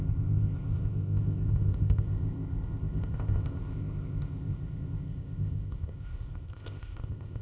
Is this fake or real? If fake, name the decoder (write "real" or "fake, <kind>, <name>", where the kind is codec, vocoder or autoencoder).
fake, codec, ZipCodec